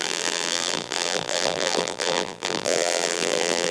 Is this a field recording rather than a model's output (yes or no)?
no